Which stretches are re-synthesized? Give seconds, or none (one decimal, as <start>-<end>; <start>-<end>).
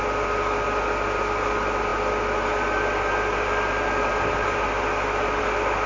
none